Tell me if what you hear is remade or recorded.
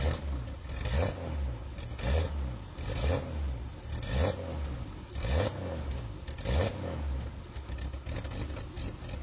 recorded